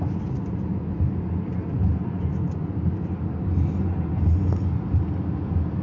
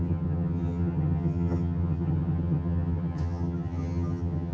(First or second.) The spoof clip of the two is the second